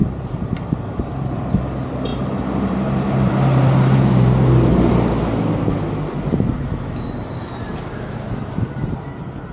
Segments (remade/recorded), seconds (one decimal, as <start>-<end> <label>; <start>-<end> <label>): 0.0-1.3 remade; 1.3-2.1 recorded; 2.1-3.3 remade; 3.3-6.6 recorded; 6.6-7.2 remade; 7.2-9.5 recorded